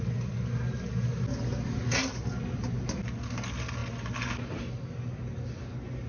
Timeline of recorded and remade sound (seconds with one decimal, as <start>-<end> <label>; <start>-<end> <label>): 0.0-6.1 recorded